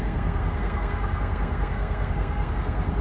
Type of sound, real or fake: fake